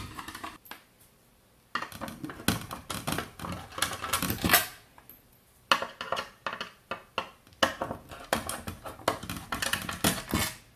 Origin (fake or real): real